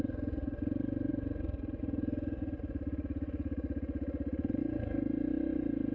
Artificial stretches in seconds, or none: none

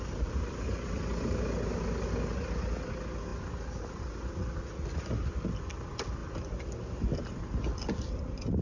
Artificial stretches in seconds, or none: none